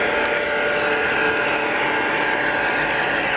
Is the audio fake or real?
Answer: real